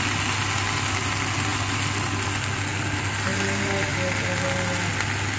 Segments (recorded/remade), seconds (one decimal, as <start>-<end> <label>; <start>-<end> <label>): 0.0-5.4 recorded